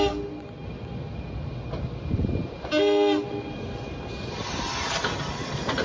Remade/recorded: recorded